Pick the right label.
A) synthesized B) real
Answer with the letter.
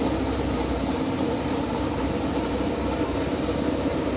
A